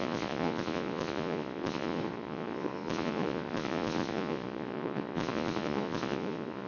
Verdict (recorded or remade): remade